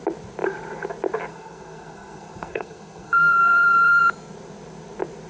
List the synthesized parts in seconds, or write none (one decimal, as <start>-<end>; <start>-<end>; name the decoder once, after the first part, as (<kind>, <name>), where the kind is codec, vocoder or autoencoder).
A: 1.3-4.0 (codec, SNAC)